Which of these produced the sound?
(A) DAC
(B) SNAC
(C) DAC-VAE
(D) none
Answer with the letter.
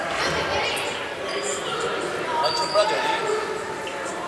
D